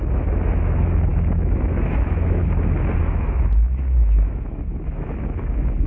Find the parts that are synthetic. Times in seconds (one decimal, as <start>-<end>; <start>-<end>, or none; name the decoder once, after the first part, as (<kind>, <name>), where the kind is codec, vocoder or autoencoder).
0.0-2.4 (autoencoder, DAC-VAE); 3.0-5.9